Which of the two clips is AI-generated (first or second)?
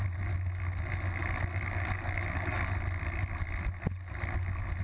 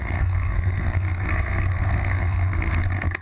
second